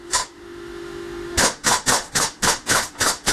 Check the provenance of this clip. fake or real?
fake